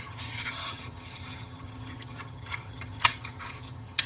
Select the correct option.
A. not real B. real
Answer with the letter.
A